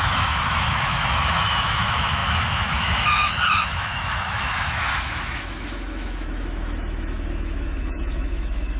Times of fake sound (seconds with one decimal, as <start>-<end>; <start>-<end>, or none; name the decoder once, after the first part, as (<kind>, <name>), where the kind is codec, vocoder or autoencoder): 0.0-8.8 (autoencoder, DAC-VAE)